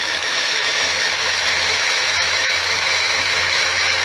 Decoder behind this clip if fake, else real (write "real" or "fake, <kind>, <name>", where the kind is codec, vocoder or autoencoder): fake, autoencoder, DAC-VAE